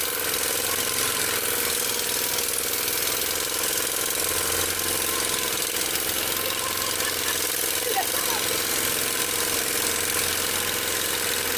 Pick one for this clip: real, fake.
real